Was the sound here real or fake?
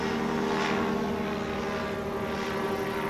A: real